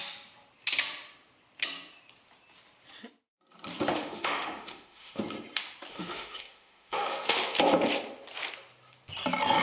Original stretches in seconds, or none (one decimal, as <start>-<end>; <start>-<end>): 0.0-3.9; 5.2-5.9; 7.4-9.6